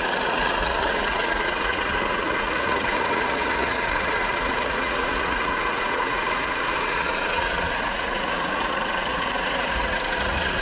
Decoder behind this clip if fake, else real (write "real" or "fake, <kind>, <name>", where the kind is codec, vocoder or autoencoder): fake, vocoder, Vocos